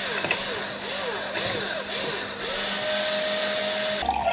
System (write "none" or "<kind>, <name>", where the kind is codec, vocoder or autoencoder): none